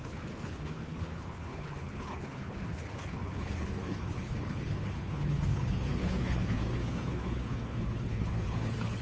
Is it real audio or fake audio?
fake